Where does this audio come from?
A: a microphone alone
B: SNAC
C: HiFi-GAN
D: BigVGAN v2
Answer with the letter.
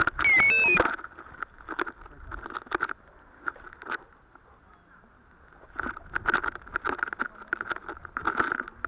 A